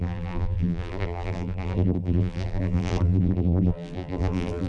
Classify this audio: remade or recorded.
remade